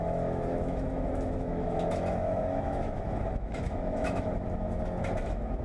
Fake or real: fake